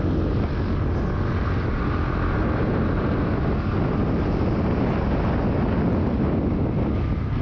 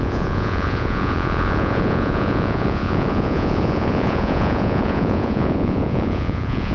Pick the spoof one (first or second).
second